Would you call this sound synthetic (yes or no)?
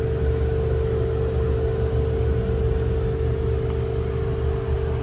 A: no